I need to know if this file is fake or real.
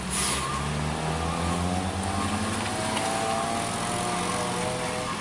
real